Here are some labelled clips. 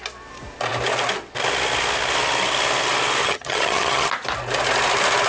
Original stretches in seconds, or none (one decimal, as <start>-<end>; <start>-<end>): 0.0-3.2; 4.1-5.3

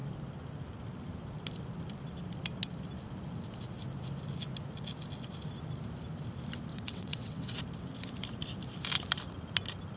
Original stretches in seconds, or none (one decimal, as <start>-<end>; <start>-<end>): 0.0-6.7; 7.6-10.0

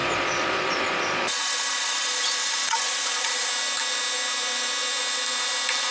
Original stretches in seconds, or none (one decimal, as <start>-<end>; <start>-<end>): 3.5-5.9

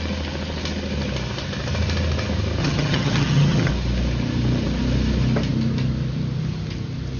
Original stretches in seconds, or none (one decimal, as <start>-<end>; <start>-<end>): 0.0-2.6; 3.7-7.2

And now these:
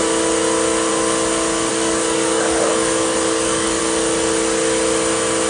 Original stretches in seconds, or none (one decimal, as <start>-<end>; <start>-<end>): 0.0-1.7; 3.8-5.5